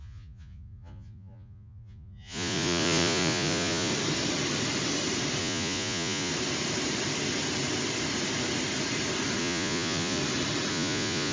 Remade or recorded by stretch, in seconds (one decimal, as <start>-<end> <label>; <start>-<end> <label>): 0.0-3.9 remade; 3.9-5.4 recorded; 5.4-6.3 remade; 6.3-9.4 recorded; 9.4-10.2 remade; 10.2-10.7 recorded; 10.7-11.3 remade